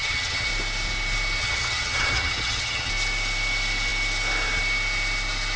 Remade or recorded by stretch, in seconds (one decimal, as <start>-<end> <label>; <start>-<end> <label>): 0.0-0.5 remade; 0.5-1.4 recorded; 1.4-2.9 remade; 2.9-5.6 recorded